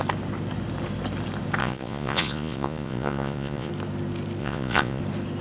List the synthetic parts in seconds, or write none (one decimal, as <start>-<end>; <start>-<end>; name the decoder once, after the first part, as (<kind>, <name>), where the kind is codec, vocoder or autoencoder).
1.6-3.7 (vocoder, Vocos); 4.4-5.0